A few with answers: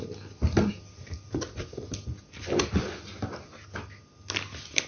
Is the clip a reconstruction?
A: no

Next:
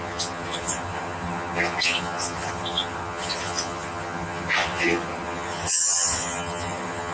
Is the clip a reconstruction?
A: yes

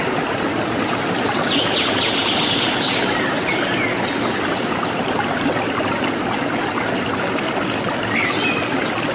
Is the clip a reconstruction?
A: no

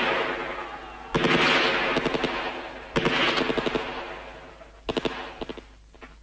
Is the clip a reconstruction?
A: no